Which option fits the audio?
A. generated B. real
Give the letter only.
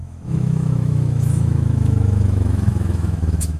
A